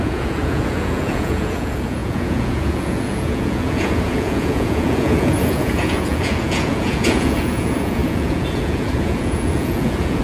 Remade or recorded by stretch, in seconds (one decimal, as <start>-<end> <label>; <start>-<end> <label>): 0.0-10.2 remade